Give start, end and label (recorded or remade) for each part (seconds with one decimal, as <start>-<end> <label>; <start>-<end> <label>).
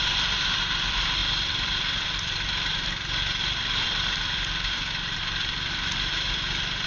0.0-6.9 recorded